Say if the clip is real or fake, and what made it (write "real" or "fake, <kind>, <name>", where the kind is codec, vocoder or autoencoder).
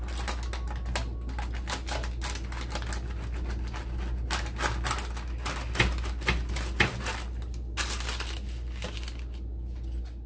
real